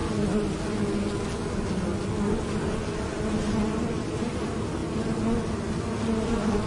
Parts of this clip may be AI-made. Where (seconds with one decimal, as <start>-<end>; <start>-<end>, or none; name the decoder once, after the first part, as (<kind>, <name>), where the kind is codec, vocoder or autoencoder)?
none